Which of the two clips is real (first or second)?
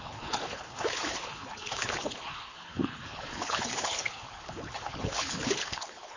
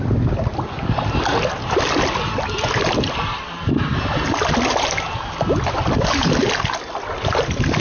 second